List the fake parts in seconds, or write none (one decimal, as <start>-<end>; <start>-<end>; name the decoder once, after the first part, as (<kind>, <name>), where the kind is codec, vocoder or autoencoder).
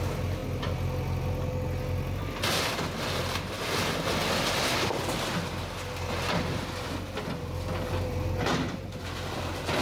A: none